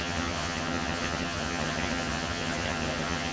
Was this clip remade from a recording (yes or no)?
yes